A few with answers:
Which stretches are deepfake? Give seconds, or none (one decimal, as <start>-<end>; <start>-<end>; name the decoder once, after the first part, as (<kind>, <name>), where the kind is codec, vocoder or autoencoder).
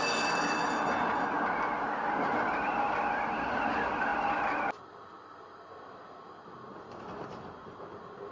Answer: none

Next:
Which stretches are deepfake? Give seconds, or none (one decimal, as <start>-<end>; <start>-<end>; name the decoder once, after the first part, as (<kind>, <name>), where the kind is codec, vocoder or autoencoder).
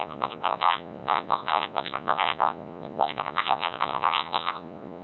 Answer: 0.0-5.0 (vocoder, Vocos)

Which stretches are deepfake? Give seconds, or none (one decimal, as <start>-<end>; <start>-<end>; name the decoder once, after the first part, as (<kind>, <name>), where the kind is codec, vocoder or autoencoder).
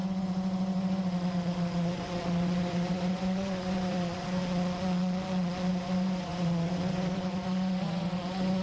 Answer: 0.0-4.4 (vocoder, Vocos); 5.7-8.6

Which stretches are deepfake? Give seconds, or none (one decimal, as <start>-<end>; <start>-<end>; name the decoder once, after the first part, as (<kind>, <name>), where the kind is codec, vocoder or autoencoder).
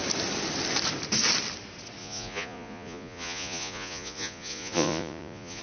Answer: 2.0-5.6 (vocoder, Vocos)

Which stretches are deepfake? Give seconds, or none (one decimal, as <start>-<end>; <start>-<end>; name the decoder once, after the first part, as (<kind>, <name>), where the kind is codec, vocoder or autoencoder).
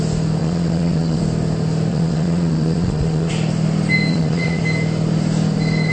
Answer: 0.4-1.2 (vocoder, Vocos); 1.9-3.3; 4.1-4.6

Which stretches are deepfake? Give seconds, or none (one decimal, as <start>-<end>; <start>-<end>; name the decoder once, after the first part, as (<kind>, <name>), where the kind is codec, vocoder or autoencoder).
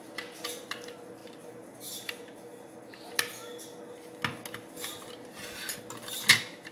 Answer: none